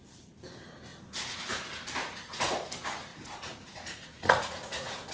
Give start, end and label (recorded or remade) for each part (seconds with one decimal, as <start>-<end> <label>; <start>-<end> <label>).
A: 0.0-0.9 recorded; 0.9-1.4 remade; 1.4-2.0 recorded; 2.0-2.5 remade; 2.5-3.1 recorded; 3.1-5.1 remade